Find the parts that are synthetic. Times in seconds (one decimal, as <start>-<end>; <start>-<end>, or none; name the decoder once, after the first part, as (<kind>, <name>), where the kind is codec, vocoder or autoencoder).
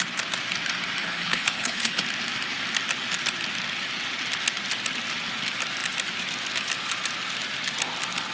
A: 1.0-2.0 (codec, HILCodec)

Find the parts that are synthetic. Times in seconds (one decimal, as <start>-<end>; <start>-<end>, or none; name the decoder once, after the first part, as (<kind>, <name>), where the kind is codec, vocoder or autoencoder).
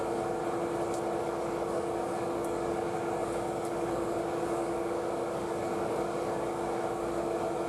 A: 0.0-0.4 (codec, DAC); 1.2-7.7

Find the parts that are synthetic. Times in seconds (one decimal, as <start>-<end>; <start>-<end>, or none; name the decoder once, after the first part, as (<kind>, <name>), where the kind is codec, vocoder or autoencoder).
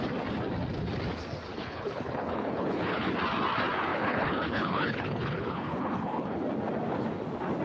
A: 1.5-3.1 (codec, HILCodec); 3.9-6.4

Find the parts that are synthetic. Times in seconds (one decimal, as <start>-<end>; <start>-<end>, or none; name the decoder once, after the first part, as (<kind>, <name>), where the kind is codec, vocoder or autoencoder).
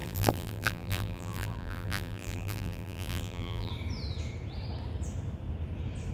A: 0.0-3.7 (vocoder, BigVGAN v2)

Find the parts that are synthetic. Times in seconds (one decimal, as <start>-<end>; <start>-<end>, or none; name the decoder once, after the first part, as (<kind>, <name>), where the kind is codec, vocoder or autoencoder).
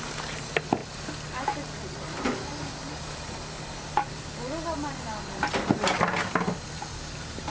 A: none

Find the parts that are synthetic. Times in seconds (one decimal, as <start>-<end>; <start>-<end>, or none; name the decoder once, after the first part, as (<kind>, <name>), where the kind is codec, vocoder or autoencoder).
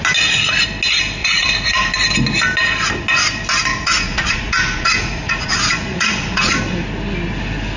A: 1.2-1.9 (vocoder, Vocos); 3.7-6.6